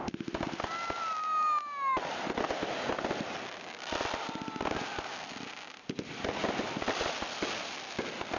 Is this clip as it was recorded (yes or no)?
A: yes